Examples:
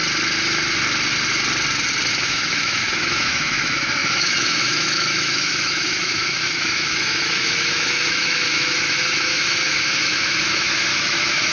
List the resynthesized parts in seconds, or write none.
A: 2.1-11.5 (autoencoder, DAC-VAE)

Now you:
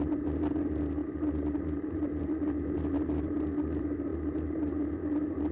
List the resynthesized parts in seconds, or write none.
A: 1.0-2.2 (vocoder, BigVGAN v2); 4.1-4.7

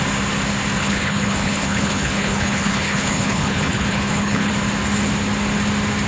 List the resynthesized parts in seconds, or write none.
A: 0.8-4.5 (codec, HILCodec)